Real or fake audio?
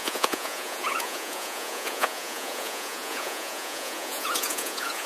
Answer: fake